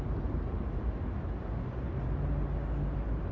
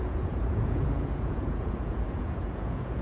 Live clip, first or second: first